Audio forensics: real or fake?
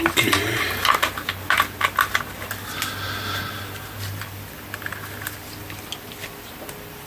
real